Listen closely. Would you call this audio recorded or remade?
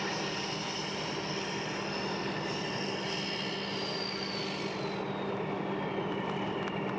recorded